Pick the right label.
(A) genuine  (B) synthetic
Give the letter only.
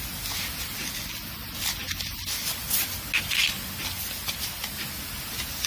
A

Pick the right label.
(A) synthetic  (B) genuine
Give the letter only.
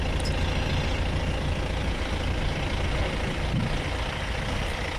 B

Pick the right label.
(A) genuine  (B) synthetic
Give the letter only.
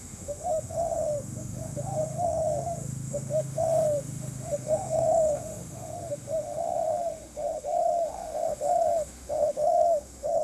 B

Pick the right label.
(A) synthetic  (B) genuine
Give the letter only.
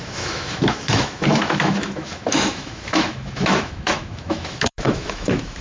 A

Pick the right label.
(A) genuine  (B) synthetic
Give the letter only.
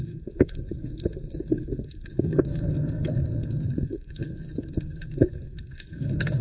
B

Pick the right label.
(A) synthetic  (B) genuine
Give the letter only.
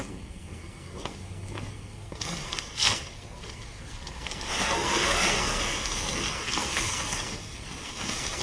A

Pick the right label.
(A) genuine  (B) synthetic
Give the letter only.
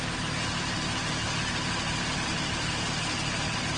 A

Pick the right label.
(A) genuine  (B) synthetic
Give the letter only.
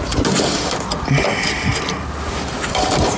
A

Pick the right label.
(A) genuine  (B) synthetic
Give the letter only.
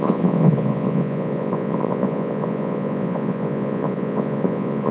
B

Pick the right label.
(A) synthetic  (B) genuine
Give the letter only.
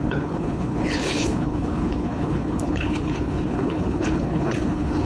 A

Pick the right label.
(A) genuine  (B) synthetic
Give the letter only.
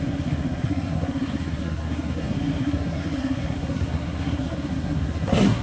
B